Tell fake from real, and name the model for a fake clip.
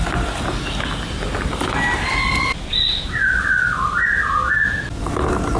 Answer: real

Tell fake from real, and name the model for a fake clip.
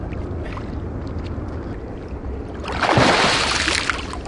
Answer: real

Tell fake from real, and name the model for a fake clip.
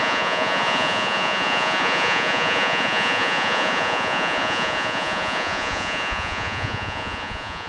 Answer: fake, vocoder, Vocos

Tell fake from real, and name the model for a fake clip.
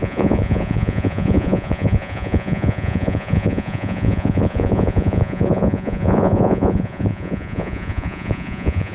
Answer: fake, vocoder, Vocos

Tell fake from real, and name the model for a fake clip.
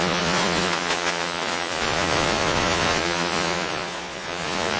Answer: fake, vocoder, Vocos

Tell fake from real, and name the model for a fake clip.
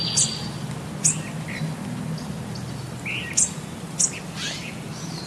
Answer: real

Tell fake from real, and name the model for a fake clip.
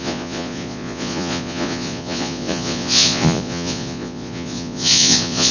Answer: fake, vocoder, Vocos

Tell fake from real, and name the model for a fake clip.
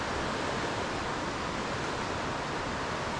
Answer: real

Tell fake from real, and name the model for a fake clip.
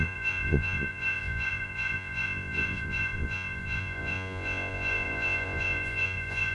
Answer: fake, vocoder, Vocos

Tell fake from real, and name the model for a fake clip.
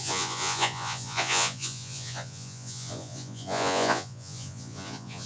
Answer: fake, vocoder, Vocos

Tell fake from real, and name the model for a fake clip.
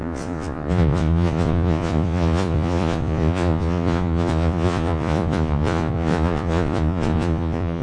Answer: fake, vocoder, Vocos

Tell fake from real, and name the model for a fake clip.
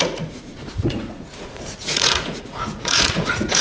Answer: fake, vocoder, Vocos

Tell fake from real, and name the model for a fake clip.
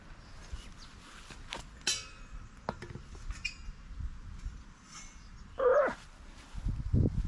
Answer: real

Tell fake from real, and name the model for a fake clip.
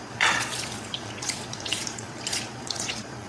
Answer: fake, vocoder, Vocos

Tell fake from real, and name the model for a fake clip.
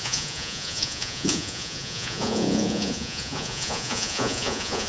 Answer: fake, vocoder, Vocos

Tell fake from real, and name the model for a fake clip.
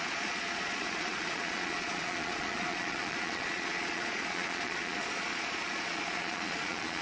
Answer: fake, vocoder, Vocos